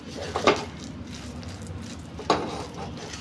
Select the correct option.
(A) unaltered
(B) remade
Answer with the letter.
A